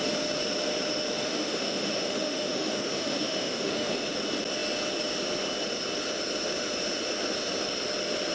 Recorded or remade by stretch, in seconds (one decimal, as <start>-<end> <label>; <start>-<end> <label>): 0.0-1.2 recorded; 1.2-3.9 remade; 3.9-8.3 recorded